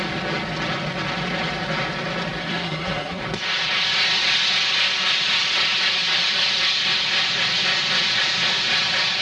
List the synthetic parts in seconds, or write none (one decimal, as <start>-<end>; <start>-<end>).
2.4-3.2